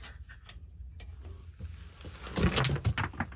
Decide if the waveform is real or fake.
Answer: real